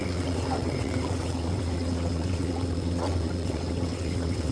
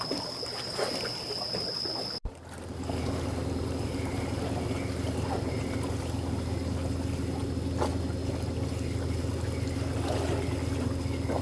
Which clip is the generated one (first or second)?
first